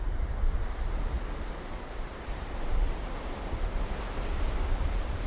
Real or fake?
fake